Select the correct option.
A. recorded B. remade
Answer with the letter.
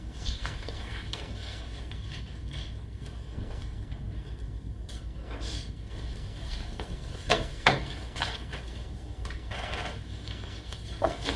B